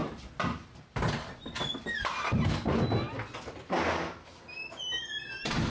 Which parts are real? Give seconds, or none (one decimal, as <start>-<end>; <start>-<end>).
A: 0.0-5.7